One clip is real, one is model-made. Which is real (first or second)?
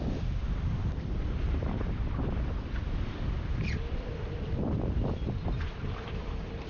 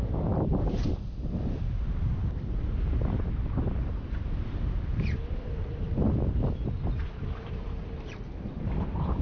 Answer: second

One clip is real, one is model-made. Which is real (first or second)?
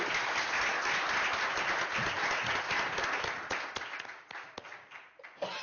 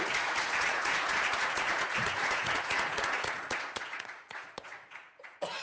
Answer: first